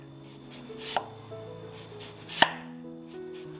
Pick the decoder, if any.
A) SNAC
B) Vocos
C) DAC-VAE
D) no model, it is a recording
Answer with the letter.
D